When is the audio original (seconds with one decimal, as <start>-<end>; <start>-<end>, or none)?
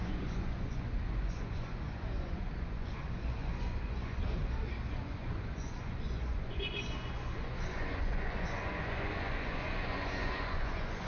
4.4-5.0